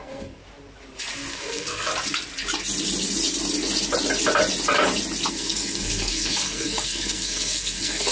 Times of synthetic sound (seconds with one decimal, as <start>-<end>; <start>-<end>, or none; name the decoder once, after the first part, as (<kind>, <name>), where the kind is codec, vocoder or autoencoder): 0.0-0.4 (codec, SNAC); 1.3-1.9; 5.3-8.1